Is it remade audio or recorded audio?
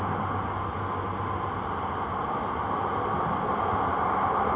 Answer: recorded